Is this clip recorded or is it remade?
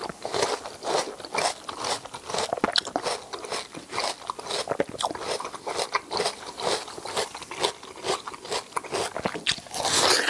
recorded